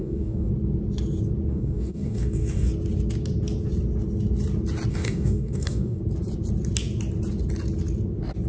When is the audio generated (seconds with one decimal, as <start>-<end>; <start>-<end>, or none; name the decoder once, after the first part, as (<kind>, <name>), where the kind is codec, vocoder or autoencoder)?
0.0-0.5 (codec, DAC); 1.5-2.7; 4.9-6.0